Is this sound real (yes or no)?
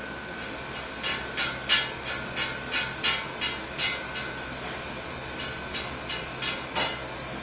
yes